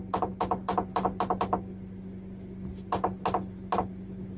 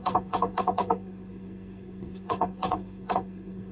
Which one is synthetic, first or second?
second